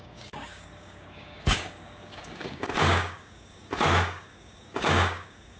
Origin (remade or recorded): remade